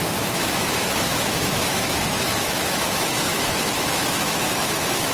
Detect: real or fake fake